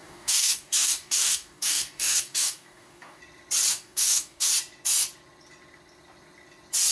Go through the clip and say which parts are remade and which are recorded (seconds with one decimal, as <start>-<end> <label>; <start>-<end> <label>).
0.0-3.2 remade; 3.2-3.7 recorded; 3.7-4.5 remade; 4.5-6.9 recorded